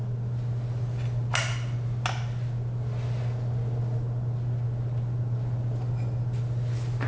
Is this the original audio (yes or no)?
yes